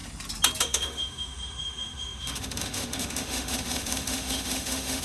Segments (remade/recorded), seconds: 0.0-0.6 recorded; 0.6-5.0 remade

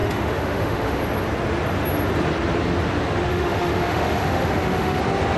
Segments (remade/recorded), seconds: 0.0-1.0 remade; 1.0-3.3 recorded; 3.3-5.0 remade; 5.0-5.4 recorded

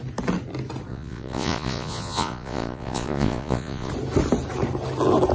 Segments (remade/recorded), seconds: 0.0-0.9 recorded; 0.9-3.9 remade; 3.9-5.3 recorded

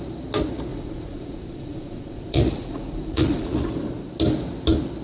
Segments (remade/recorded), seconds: 0.0-0.7 recorded; 0.7-3.7 remade; 3.7-5.0 recorded

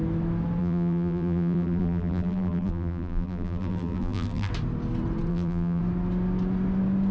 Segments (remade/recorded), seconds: 0.0-0.6 recorded; 0.6-4.5 remade; 4.5-5.3 recorded; 5.3-5.8 remade; 5.8-7.1 recorded

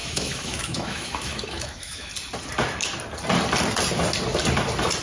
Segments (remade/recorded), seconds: 0.0-2.1 remade; 2.1-5.0 recorded

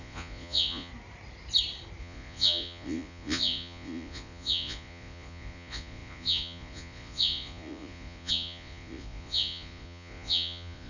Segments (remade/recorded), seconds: 0.0-0.9 remade; 0.9-2.0 recorded; 2.0-10.9 remade